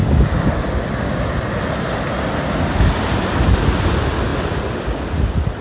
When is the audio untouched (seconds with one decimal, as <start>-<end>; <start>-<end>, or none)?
0.0-5.6